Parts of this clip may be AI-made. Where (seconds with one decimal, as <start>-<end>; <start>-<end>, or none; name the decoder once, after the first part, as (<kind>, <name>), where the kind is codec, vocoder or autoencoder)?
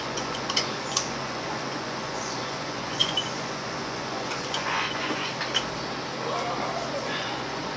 0.0-5.3 (vocoder, Vocos); 6.9-7.8